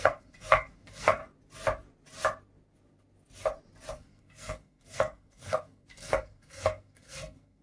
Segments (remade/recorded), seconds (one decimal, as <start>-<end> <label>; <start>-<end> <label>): 0.0-1.2 remade; 1.2-3.9 recorded; 3.9-7.6 remade

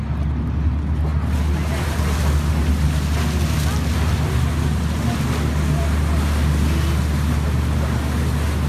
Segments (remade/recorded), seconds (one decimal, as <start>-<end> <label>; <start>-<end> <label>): 0.0-8.7 recorded

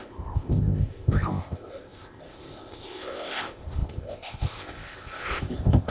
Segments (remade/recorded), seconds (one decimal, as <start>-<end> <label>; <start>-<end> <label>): 0.0-5.9 remade

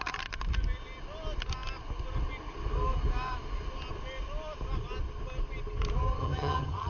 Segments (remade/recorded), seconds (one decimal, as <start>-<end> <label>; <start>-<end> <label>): 0.0-6.2 recorded; 6.2-6.9 remade

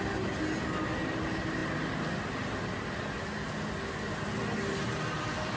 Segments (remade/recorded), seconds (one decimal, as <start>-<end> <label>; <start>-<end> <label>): 0.0-5.6 recorded

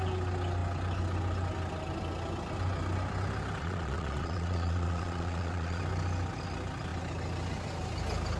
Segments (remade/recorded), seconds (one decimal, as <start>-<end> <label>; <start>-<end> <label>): 0.0-3.6 recorded; 3.6-5.8 remade; 5.8-8.4 recorded

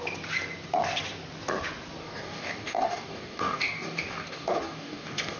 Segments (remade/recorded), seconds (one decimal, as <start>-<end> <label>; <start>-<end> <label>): 0.0-2.0 recorded; 2.0-5.4 remade

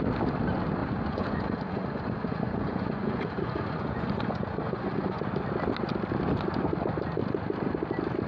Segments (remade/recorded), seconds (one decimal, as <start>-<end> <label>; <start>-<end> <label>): 0.0-0.8 recorded; 0.8-5.2 remade; 5.2-8.3 recorded